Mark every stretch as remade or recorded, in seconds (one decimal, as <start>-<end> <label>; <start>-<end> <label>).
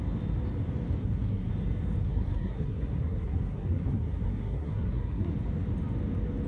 0.0-1.0 recorded; 1.0-1.5 remade; 1.5-2.0 recorded; 2.0-5.3 remade; 5.3-6.5 recorded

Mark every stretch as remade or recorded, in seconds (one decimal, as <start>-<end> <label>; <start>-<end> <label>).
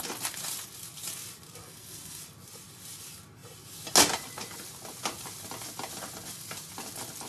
0.0-1.6 recorded; 1.6-2.2 remade; 2.2-7.3 recorded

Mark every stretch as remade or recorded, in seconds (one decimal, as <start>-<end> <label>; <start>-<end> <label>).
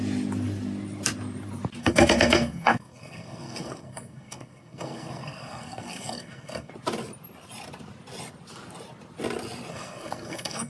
0.0-1.8 recorded; 1.8-6.7 remade; 6.7-9.7 recorded; 9.7-10.7 remade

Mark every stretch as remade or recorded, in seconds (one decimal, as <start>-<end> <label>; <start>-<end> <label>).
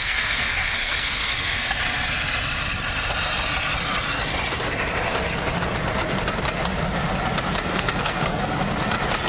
0.0-1.8 remade; 1.8-7.7 recorded; 7.7-8.4 remade; 8.4-9.3 recorded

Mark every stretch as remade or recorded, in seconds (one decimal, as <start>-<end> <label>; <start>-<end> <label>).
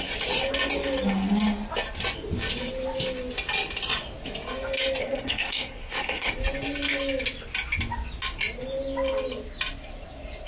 0.0-5.0 recorded; 5.0-6.3 remade; 6.3-10.5 recorded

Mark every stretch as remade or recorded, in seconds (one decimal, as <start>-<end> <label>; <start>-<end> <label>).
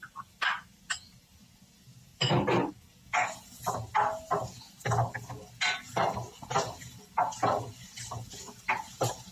0.0-9.3 recorded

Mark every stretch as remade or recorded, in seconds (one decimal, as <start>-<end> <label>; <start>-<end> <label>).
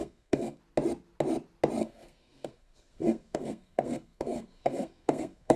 0.0-0.6 remade; 0.6-1.8 recorded; 1.8-5.6 remade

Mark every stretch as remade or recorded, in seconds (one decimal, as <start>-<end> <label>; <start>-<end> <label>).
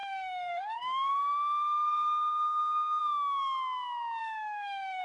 0.0-3.0 remade; 3.0-4.2 recorded; 4.2-5.0 remade